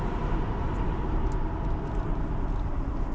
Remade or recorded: recorded